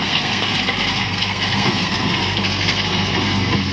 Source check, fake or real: fake